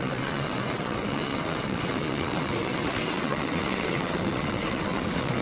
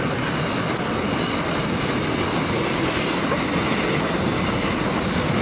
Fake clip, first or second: first